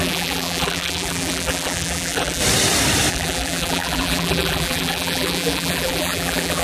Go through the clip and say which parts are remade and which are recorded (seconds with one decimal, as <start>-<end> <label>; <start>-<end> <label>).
0.0-2.4 remade; 2.4-3.1 recorded; 3.1-6.6 remade